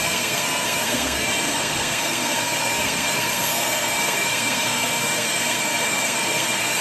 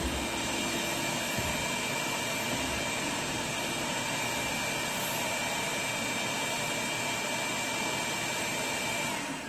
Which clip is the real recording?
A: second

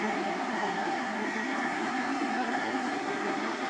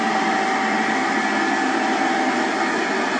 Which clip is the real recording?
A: second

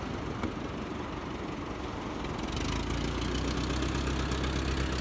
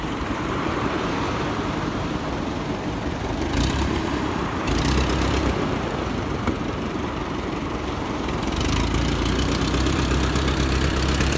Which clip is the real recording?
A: first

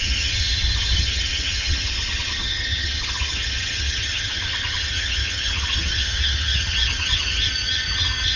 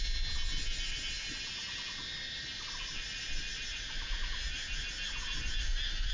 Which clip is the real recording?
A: second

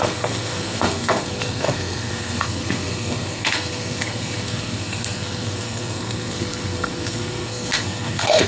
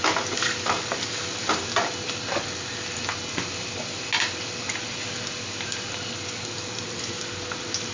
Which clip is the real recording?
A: second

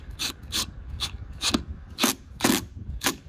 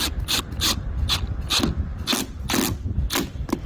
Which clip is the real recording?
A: second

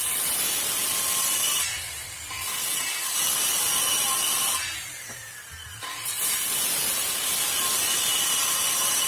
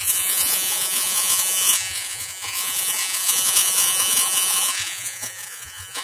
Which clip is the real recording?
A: first